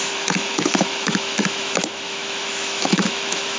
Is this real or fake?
fake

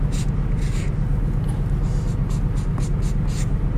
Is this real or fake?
real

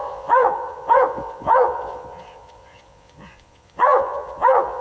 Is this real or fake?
fake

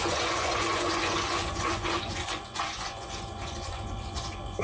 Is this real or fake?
fake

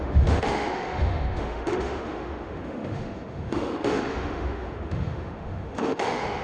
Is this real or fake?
fake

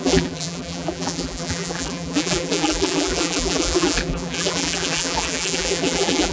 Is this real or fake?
fake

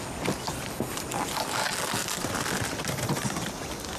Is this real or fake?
real